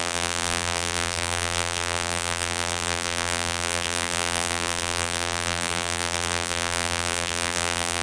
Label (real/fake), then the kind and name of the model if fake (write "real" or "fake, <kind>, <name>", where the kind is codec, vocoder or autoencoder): fake, vocoder, BigVGAN v2